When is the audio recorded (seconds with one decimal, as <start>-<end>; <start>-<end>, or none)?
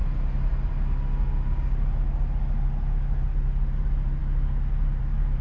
0.0-5.4